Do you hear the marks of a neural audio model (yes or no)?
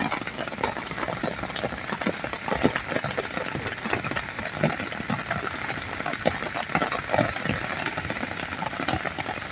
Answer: no